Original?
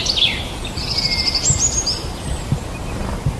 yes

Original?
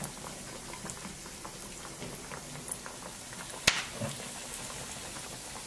yes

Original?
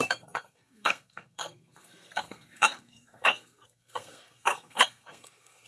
no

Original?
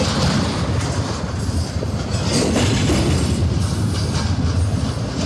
yes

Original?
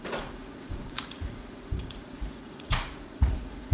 no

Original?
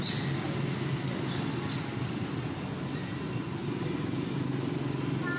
yes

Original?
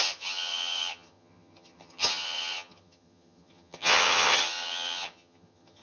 no